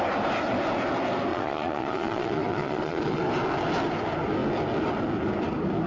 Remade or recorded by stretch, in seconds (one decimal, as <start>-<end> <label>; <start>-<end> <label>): 0.0-1.3 recorded; 1.3-3.2 remade; 3.2-5.9 recorded